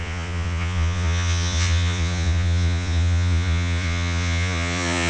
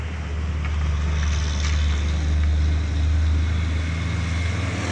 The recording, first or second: second